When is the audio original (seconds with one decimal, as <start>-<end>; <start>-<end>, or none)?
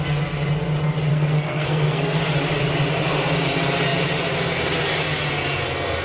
0.0-1.1; 2.2-6.0